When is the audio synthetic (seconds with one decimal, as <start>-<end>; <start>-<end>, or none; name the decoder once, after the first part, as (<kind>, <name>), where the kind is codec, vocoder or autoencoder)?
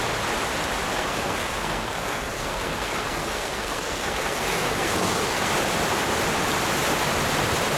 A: 0.9-5.5 (codec, SNAC)